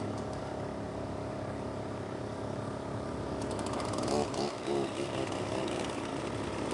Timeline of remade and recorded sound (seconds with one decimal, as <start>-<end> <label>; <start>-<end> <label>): 0.0-6.1 remade; 6.1-6.7 recorded